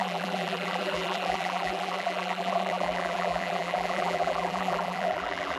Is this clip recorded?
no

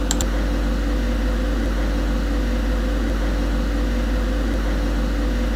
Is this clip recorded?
yes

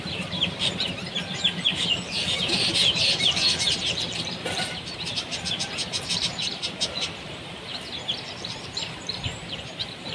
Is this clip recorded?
no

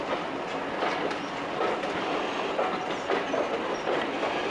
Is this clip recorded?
yes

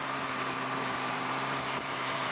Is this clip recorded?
no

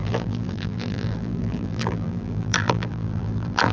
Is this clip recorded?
no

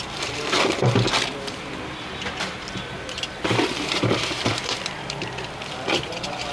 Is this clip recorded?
no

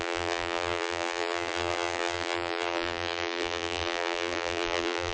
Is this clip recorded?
no